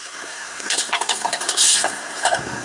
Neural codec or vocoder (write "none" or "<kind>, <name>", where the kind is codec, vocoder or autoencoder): codec, SNAC